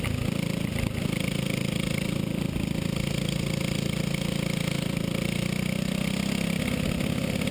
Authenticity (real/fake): real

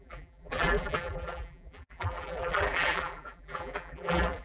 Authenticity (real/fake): fake